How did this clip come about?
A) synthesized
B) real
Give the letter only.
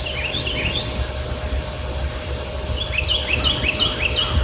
B